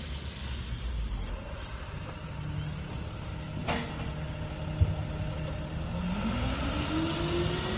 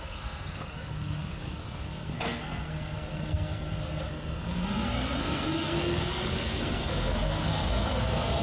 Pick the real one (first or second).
first